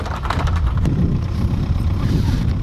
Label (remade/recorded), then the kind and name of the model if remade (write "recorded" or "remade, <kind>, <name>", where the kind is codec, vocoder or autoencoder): remade, vocoder, BigVGAN v2